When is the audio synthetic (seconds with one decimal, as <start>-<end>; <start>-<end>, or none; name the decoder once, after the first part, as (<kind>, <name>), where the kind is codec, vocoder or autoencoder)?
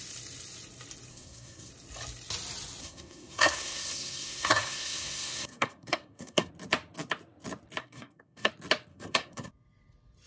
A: 1.1-1.7 (codec, SNAC); 2.8-6.5; 7.8-8.5; 8.9-9.5